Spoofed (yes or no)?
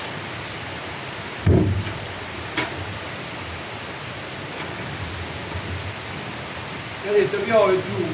no